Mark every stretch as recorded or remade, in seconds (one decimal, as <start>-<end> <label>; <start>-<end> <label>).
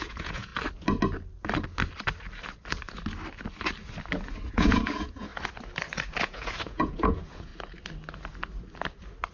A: 0.0-0.5 remade; 0.5-4.5 recorded; 4.5-5.3 remade; 5.3-6.2 recorded; 6.2-7.5 remade; 7.5-9.3 recorded